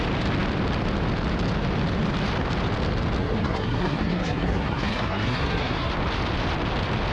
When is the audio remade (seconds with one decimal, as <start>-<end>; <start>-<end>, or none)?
3.2-5.9